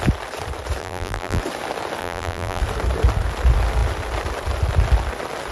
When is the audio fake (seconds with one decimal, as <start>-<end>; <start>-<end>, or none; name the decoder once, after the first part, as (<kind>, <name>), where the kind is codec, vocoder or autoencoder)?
0.8-1.4 (vocoder, BigVGAN v2); 2.0-2.6